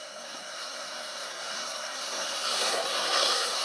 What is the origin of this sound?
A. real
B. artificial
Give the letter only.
B